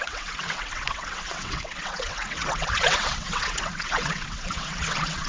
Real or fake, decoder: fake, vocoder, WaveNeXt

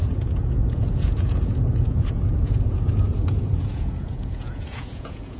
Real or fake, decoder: fake, vocoder, Vocos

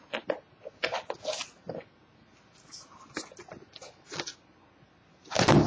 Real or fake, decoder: real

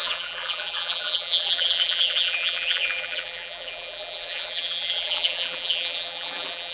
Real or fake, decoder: fake, vocoder, BigVGAN v2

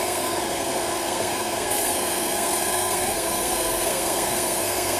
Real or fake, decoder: fake, codec, SNAC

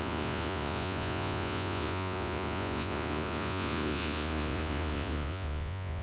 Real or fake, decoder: fake, vocoder, Vocos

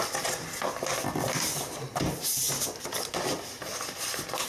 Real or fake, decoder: real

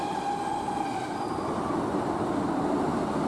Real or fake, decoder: real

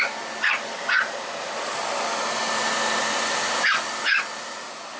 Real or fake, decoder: real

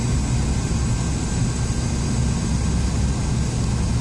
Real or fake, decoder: real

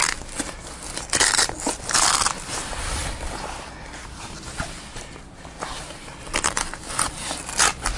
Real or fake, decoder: real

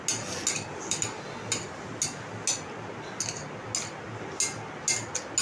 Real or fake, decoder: real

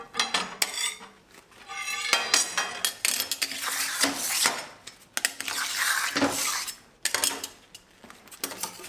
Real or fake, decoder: real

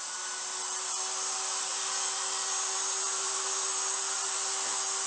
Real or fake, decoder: real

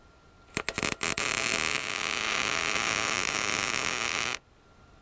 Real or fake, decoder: real